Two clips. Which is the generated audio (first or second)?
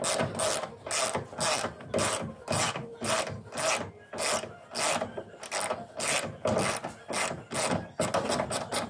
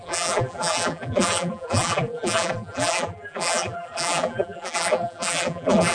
second